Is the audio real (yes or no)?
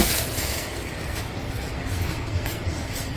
no